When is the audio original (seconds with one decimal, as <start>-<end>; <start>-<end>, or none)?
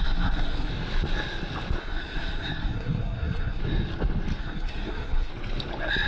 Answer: 0.7-1.8; 3.6-4.4; 5.3-6.1